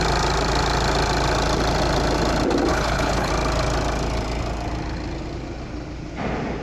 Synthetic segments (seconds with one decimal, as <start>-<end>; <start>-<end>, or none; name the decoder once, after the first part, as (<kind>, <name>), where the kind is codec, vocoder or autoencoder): 2.7-3.3 (codec, HILCodec)